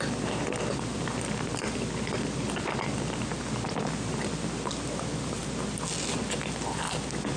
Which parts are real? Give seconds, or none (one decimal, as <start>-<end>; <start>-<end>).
0.0-7.4